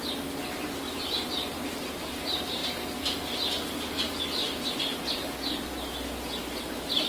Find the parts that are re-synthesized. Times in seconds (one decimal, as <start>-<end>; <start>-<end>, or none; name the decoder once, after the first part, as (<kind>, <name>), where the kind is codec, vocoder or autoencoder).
none